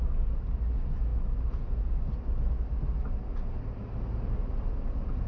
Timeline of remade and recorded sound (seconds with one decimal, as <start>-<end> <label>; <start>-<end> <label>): 0.0-5.3 recorded